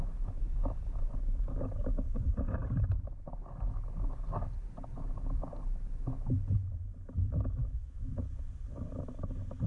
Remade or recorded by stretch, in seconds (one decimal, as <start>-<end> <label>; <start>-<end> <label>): 0.0-7.6 recorded; 7.6-8.2 remade; 8.2-9.7 recorded